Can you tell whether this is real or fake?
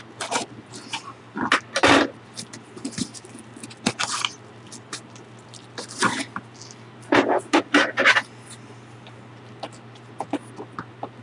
real